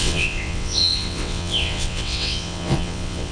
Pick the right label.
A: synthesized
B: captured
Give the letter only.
A